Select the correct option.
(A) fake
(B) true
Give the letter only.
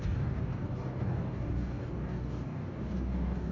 A